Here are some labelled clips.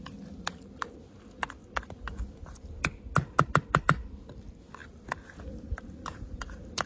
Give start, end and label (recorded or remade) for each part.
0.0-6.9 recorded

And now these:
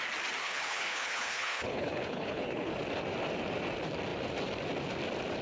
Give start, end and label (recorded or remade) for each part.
0.0-0.4 recorded; 0.4-2.7 remade; 2.7-5.4 recorded